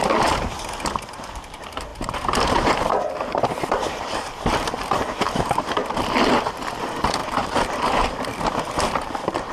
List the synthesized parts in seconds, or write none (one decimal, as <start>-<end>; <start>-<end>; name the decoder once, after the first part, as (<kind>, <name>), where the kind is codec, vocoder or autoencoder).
0.0-5.8 (vocoder, BigVGAN v2); 6.8-9.5